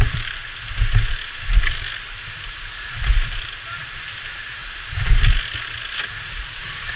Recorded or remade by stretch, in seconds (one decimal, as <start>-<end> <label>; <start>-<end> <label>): 0.0-0.4 remade; 0.4-3.7 recorded; 3.7-4.6 remade; 4.6-6.5 recorded; 6.5-7.0 remade